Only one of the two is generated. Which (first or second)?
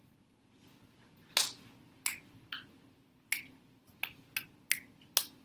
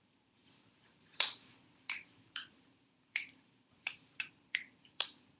second